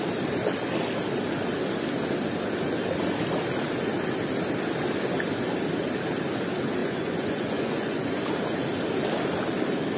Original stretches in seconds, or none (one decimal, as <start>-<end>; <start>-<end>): 0.0-6.8; 8.2-10.0